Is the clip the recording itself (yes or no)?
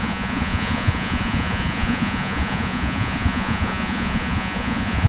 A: no